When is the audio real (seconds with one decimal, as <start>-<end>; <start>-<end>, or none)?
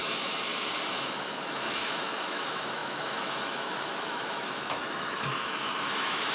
0.5-1.0